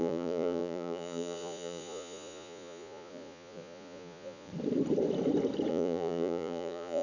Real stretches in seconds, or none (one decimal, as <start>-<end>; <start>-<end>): 4.5-5.7